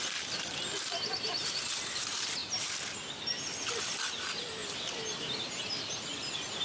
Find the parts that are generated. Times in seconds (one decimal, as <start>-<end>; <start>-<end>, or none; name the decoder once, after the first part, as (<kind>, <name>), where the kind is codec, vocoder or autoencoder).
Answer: none